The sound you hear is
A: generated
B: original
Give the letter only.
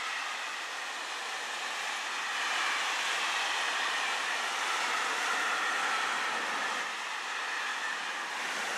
B